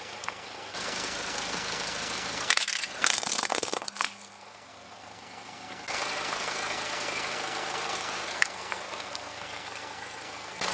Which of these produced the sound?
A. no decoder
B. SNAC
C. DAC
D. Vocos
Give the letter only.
B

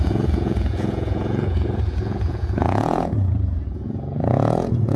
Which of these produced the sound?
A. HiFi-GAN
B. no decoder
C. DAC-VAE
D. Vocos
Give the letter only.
D